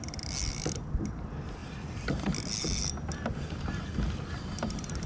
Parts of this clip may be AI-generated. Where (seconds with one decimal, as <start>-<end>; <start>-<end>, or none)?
none